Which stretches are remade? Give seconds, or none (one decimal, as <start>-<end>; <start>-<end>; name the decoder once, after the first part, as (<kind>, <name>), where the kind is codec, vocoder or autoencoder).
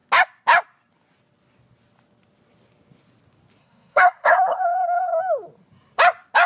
3.6-5.2 (codec, SNAC)